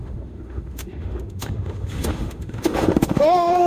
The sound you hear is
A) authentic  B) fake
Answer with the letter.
B